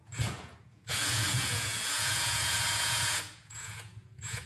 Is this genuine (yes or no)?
no